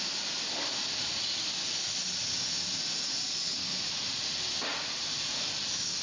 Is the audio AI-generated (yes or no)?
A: no